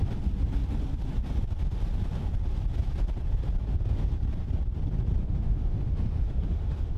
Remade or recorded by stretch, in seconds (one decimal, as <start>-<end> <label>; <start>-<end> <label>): 0.0-5.2 recorded; 5.2-7.0 remade